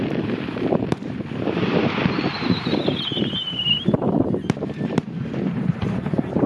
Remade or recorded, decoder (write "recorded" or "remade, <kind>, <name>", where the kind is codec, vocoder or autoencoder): remade, vocoder, BigVGAN v2